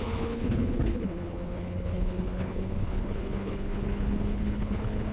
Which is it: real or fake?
fake